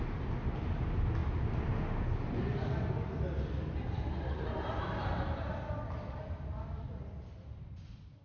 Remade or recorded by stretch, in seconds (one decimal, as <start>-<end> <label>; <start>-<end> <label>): 0.0-8.2 recorded